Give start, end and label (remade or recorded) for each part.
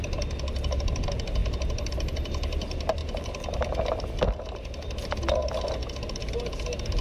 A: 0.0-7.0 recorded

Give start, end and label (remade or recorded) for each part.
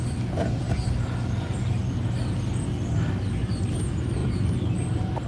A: 0.0-1.8 remade; 1.8-3.4 recorded; 3.4-5.3 remade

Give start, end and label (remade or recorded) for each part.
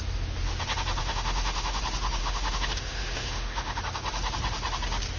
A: 0.0-1.0 recorded; 1.0-1.8 remade; 1.8-2.2 recorded; 2.2-3.8 remade; 3.8-5.2 recorded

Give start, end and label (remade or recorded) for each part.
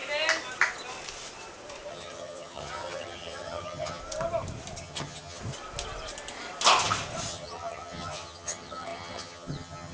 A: 0.0-1.9 recorded; 1.9-4.0 remade; 4.0-4.8 recorded; 4.8-5.4 remade; 5.4-7.3 recorded; 7.3-9.9 remade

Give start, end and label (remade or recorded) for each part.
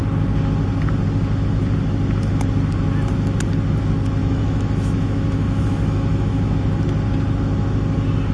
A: 0.0-4.2 recorded; 4.2-6.5 remade; 6.5-8.3 recorded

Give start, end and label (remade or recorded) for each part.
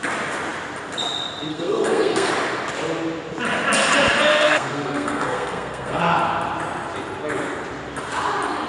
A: 0.0-1.5 recorded; 1.5-2.3 remade; 2.3-4.3 recorded; 4.3-6.0 remade; 6.0-8.7 recorded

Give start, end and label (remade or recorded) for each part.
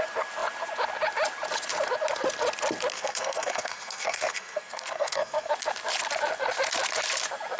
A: 0.0-2.9 recorded; 2.9-5.5 remade; 5.5-7.6 recorded